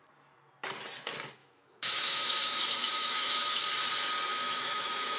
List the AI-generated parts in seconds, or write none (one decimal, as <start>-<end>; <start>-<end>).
1.4-3.6; 4.3-5.2